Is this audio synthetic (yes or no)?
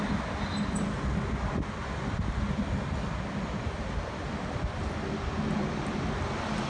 no